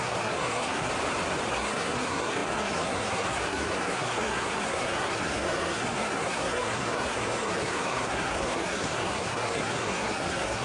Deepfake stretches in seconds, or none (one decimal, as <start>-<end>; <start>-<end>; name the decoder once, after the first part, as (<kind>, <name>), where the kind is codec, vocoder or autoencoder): 0.0-0.9 (codec, SNAC); 1.5-10.6